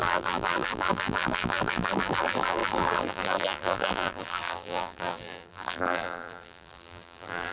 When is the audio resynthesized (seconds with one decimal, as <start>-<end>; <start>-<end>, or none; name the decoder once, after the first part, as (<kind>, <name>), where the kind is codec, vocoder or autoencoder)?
0.0-7.5 (vocoder, BigVGAN v2)